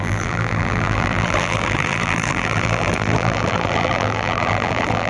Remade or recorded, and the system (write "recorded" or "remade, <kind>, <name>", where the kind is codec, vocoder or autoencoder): remade, vocoder, BigVGAN v2